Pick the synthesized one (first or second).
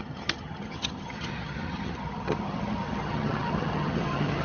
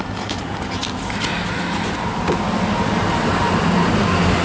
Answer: first